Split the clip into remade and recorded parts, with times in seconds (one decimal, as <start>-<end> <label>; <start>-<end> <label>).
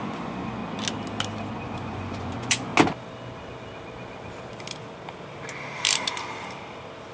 0.0-0.6 remade; 0.6-1.5 recorded; 1.5-2.7 remade; 2.7-7.1 recorded